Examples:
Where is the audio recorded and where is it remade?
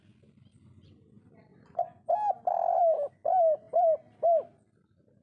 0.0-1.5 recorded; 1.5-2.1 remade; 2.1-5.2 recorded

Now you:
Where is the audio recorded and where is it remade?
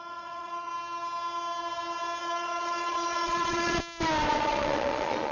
0.0-0.7 remade; 0.7-2.2 recorded; 2.2-3.8 remade; 3.8-4.3 recorded; 4.3-5.3 remade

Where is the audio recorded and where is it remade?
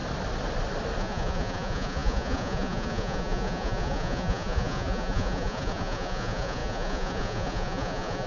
0.0-1.0 recorded; 1.0-8.3 remade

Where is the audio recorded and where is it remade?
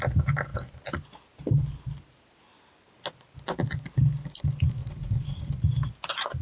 0.0-4.8 recorded; 4.8-5.5 remade; 5.5-6.4 recorded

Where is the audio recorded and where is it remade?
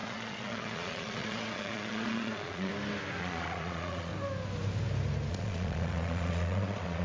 0.0-2.7 remade; 2.7-3.2 recorded; 3.2-4.1 remade; 4.1-5.3 recorded; 5.3-7.0 remade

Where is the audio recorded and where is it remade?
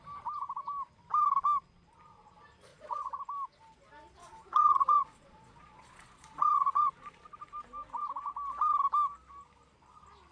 0.0-2.7 recorded; 2.7-3.2 remade; 3.2-4.2 recorded; 4.2-6.9 remade; 6.9-10.3 recorded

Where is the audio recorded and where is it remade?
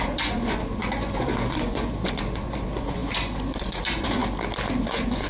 0.0-4.2 remade; 4.2-4.8 recorded; 4.8-5.3 remade